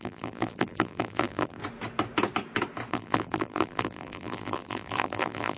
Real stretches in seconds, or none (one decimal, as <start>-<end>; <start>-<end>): 1.6-2.9